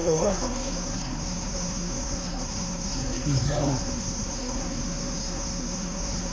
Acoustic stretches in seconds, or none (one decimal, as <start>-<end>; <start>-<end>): none